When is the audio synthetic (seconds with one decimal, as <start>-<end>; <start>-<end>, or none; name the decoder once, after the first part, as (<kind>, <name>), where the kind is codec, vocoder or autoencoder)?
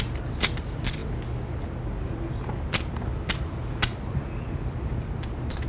none